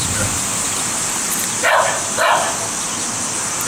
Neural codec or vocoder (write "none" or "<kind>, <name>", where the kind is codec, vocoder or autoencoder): none